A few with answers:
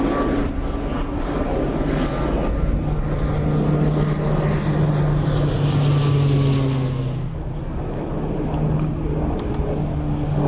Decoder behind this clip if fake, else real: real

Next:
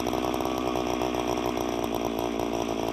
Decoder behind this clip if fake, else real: real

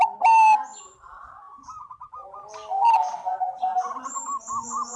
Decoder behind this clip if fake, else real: real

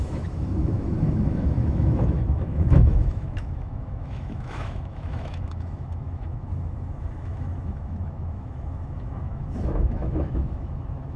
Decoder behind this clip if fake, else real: fake, autoencoder, DAC-VAE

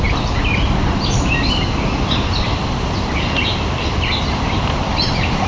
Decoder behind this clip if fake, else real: real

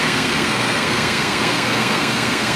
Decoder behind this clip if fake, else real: fake, codec, SNAC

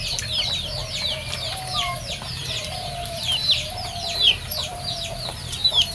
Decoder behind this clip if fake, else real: fake, vocoder, BigVGAN v2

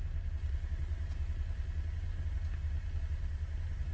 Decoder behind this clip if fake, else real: real